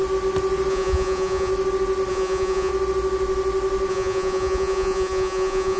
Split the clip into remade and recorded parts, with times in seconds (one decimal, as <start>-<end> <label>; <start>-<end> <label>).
0.0-0.7 recorded; 0.7-1.5 remade; 1.5-2.1 recorded; 2.1-2.7 remade; 2.7-3.9 recorded; 3.9-5.8 remade